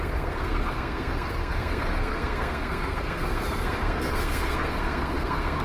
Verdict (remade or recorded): remade